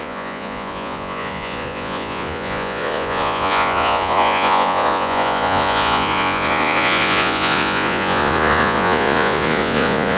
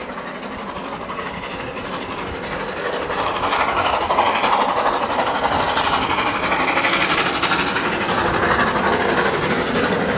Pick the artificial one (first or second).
first